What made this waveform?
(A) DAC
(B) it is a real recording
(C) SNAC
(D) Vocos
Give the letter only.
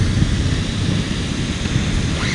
B